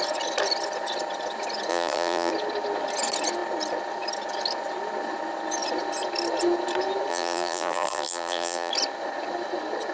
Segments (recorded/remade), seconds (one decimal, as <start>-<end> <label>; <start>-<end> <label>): 0.0-1.7 recorded; 1.7-2.3 remade; 2.3-7.1 recorded; 7.1-8.7 remade; 8.7-9.9 recorded